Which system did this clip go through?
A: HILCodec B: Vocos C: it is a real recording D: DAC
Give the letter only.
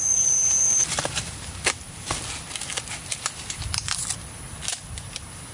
C